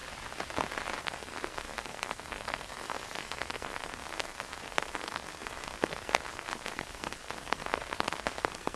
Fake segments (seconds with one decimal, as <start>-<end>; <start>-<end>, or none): 1.0-8.8